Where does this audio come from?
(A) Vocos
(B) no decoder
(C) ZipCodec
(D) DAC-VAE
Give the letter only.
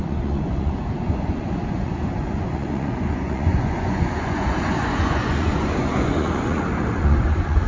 A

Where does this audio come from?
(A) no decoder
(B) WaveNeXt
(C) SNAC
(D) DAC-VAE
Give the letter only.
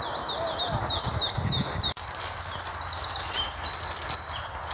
A